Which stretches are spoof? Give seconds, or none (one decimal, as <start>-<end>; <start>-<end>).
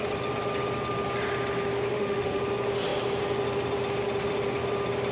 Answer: 1.9-2.4